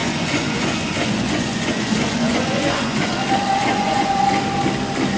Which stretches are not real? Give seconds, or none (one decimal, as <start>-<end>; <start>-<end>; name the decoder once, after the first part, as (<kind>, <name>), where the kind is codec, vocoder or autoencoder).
0.0-3.1 (vocoder, Vocos); 3.6-4.2

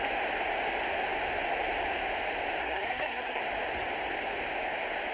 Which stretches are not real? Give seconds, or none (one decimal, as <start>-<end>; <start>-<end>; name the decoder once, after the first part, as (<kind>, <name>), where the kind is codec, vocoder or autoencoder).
2.6-3.4 (codec, SNAC)